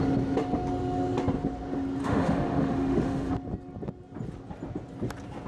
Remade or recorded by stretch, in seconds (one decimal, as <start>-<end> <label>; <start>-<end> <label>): 0.0-2.0 recorded; 2.0-3.3 remade; 3.3-5.5 recorded